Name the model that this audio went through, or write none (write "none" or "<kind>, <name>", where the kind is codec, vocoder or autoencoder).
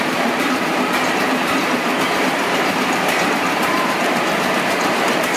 vocoder, BigVGAN v2